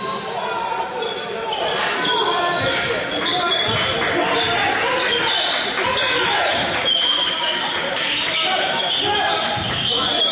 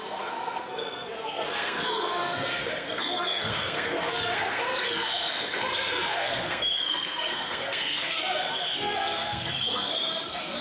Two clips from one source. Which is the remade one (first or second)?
second